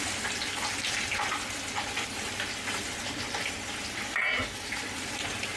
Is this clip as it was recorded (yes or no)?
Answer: yes